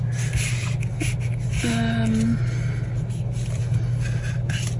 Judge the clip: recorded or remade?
recorded